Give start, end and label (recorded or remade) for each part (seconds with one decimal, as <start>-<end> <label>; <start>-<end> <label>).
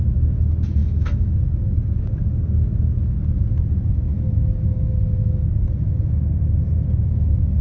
0.0-0.8 recorded; 0.8-1.3 remade; 1.3-4.1 recorded; 4.1-5.5 remade; 5.5-7.6 recorded